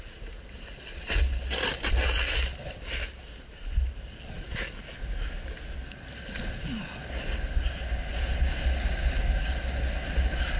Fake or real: real